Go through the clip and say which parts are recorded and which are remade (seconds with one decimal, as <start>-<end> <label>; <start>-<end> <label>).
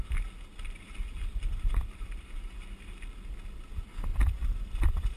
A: 0.0-1.3 recorded; 1.3-2.9 remade; 2.9-4.1 recorded; 4.1-5.2 remade